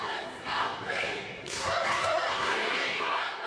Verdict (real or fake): fake